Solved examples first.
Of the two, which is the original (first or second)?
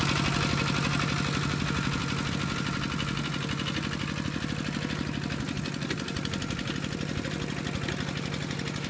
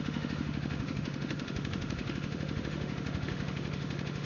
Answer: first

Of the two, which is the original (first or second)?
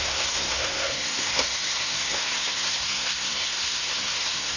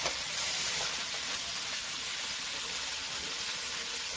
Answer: second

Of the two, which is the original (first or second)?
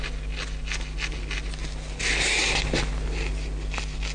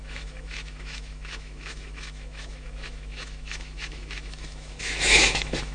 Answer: first